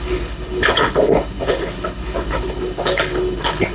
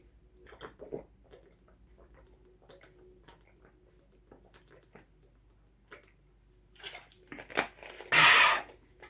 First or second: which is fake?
first